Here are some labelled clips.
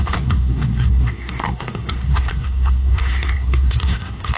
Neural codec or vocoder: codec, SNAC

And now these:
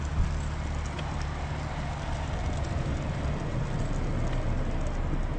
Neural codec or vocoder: none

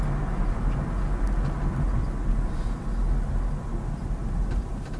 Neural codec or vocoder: none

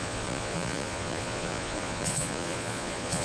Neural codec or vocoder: vocoder, Vocos